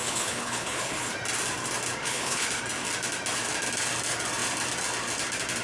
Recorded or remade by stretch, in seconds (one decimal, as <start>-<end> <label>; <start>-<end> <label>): 0.0-1.1 remade; 1.1-2.0 recorded; 2.0-2.6 remade; 2.6-5.6 recorded